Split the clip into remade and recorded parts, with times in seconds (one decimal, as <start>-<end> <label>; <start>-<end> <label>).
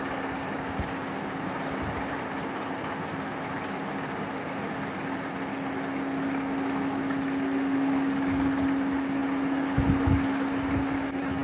0.0-11.4 recorded